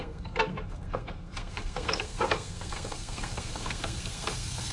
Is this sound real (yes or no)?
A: no